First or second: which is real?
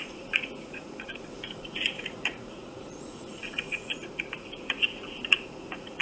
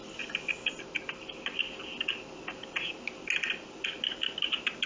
second